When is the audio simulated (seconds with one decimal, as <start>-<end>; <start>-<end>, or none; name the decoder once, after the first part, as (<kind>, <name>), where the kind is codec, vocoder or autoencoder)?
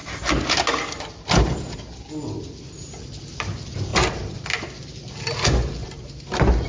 none